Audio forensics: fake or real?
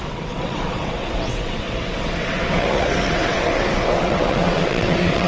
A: fake